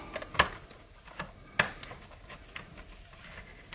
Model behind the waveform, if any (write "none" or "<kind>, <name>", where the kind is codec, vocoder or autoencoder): none